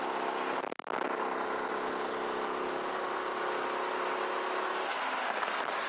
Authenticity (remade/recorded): recorded